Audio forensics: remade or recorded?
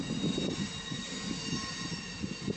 recorded